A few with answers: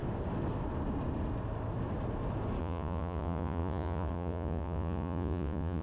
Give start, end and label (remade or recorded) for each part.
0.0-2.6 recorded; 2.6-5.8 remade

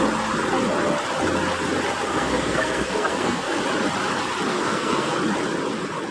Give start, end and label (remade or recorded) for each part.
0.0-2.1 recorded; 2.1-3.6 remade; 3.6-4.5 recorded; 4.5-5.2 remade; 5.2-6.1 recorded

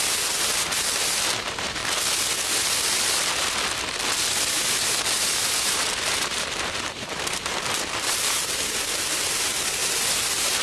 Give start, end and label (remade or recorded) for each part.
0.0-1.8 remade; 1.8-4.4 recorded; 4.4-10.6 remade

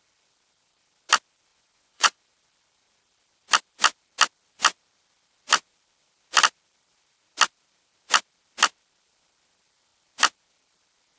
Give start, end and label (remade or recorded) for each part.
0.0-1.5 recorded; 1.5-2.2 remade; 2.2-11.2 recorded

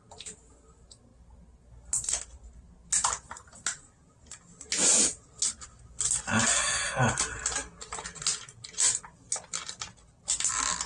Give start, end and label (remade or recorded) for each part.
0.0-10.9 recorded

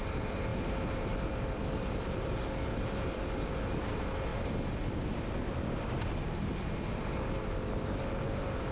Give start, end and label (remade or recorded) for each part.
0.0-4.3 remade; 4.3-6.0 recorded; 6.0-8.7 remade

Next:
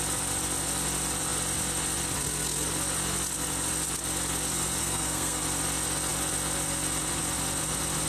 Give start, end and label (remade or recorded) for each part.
0.0-4.8 recorded; 4.8-5.4 remade; 5.4-8.1 recorded